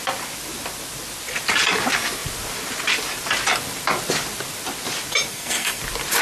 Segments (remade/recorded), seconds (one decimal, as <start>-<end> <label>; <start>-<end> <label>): 0.0-5.3 recorded; 5.3-5.8 remade; 5.8-6.2 recorded